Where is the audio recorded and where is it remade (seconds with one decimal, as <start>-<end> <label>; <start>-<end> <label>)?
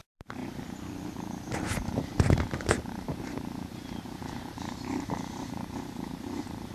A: 0.0-0.4 remade; 0.4-1.1 recorded; 1.1-2.1 remade; 2.1-2.9 recorded; 2.9-6.7 remade